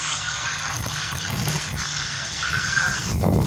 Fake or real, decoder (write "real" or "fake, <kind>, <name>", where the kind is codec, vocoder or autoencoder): fake, codec, SNAC